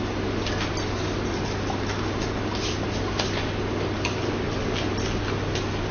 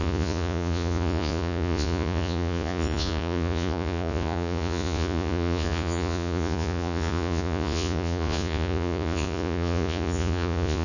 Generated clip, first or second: second